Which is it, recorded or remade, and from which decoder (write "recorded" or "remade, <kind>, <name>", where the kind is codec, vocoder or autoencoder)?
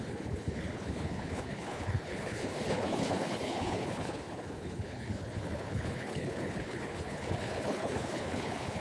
remade, codec, HILCodec